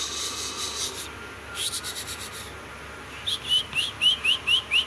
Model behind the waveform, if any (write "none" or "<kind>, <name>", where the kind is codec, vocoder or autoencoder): none